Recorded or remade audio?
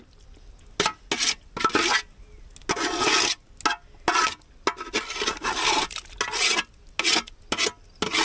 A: recorded